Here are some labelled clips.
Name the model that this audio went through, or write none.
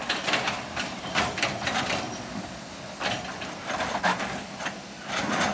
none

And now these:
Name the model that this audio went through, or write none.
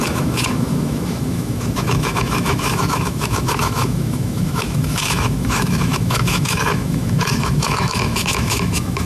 autoencoder, DAC-VAE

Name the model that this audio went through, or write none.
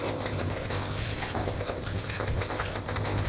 codec, ZipCodec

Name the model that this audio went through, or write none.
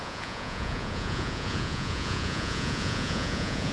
vocoder, Vocos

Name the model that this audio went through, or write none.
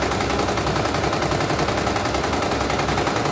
none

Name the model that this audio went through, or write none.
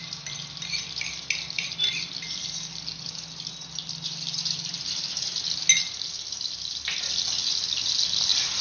none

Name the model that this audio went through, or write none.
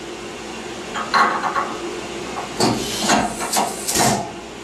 vocoder, Vocos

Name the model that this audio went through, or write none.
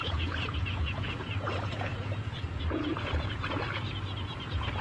vocoder, Vocos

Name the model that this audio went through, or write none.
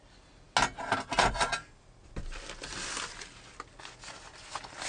none